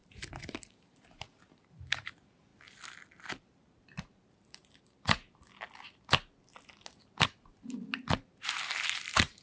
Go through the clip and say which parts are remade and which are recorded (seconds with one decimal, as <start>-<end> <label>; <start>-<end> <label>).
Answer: 0.0-2.5 remade; 2.5-3.6 recorded; 3.6-5.2 remade; 5.2-8.1 recorded; 8.1-9.4 remade